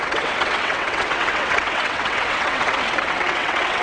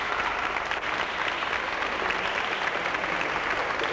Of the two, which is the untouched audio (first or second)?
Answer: second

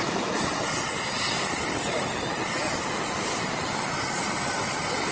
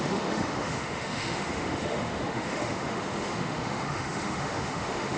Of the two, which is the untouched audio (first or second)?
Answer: first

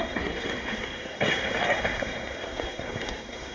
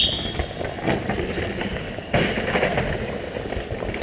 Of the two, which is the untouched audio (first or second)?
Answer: second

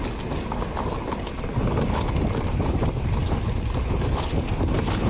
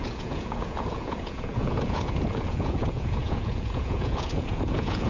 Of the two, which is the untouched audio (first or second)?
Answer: first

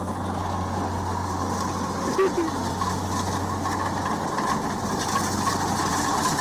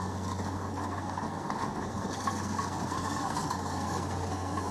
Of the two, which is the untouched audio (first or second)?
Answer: first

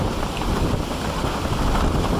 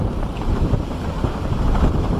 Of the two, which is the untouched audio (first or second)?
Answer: first